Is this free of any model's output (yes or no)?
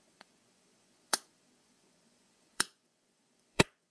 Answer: no